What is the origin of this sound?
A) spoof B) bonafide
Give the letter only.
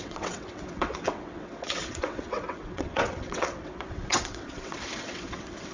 A